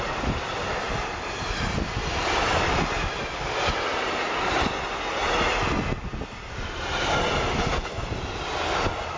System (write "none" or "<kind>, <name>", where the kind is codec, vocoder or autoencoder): none